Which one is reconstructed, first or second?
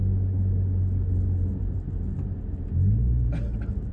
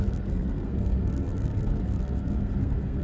second